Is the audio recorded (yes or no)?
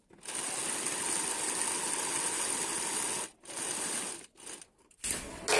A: yes